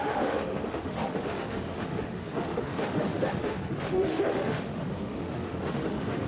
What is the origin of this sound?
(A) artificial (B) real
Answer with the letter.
A